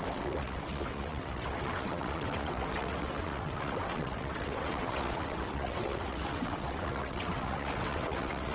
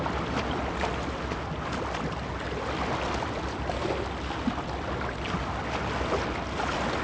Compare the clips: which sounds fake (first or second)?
first